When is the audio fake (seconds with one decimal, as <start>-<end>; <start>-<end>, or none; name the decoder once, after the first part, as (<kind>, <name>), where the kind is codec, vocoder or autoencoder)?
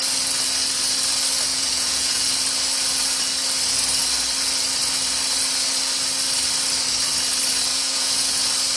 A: 1.5-2.2 (vocoder, Vocos); 7.7-8.4